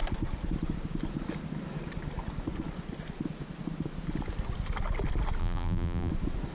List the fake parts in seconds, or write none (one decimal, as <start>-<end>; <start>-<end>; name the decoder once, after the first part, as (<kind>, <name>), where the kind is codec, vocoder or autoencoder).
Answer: 5.4-6.1 (vocoder, BigVGAN v2)